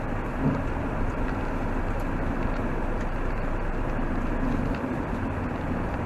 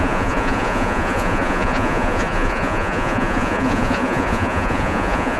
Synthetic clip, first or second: second